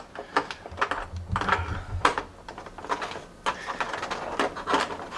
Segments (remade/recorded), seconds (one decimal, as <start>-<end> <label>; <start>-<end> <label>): 0.0-1.7 recorded; 1.7-4.8 remade; 4.8-5.2 recorded